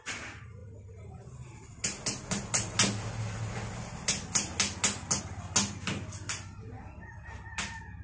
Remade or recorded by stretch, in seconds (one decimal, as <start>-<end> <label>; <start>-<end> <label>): 0.0-8.0 recorded